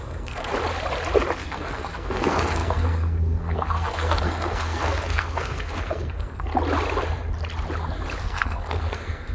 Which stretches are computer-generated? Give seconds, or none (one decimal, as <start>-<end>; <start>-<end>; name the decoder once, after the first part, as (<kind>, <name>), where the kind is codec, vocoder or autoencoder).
0.0-0.5 (codec, SNAC); 1.4-6.5; 8.2-9.3